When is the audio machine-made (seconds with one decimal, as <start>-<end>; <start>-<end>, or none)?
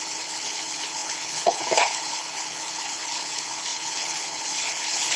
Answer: 0.0-5.2